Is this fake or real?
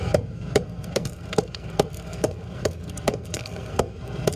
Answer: fake